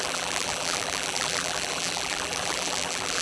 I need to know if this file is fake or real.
fake